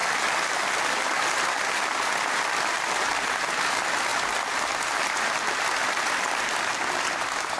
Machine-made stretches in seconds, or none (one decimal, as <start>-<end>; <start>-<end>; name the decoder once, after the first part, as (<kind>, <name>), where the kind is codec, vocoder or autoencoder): none